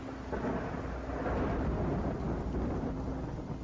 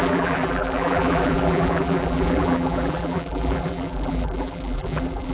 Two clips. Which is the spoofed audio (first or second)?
second